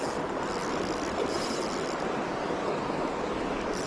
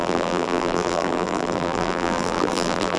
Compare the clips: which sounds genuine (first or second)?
first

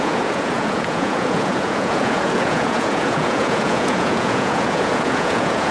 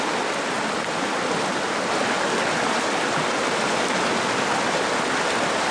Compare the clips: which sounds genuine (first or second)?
second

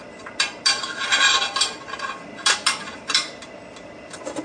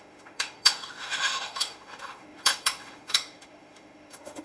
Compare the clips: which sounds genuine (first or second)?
first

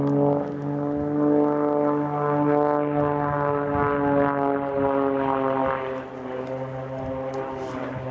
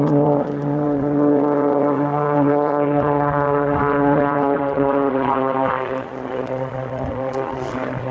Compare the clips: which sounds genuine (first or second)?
first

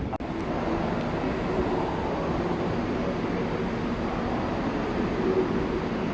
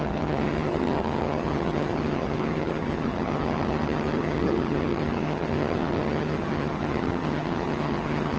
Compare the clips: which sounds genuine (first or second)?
first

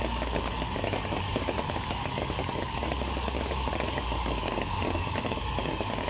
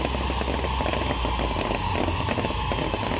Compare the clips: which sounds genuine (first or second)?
second